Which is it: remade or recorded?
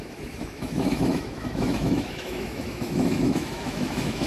remade